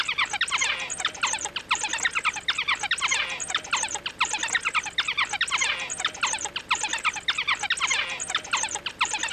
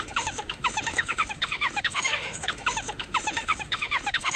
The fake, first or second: second